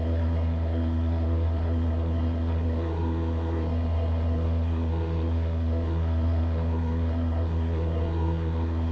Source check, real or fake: fake